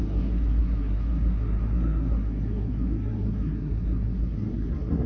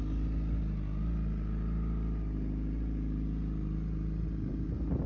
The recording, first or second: second